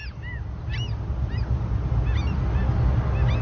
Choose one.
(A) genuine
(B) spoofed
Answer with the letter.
A